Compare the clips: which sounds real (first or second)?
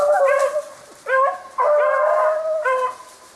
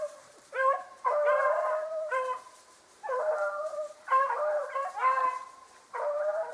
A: first